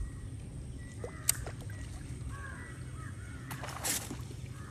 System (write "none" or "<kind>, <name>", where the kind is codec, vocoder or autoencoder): none